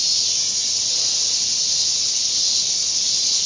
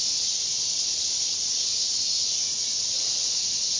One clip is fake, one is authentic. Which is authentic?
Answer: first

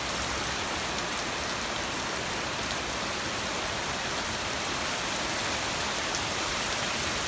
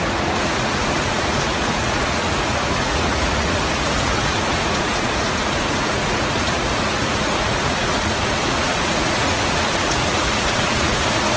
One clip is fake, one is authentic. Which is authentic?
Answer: first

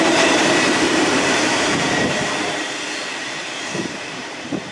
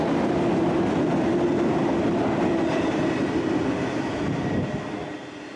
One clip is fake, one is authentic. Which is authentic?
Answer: second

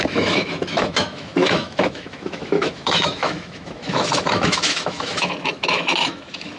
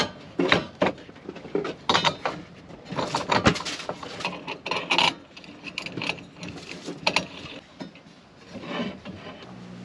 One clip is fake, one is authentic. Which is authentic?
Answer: second